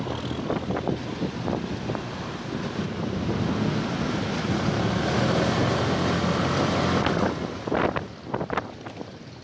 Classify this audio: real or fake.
real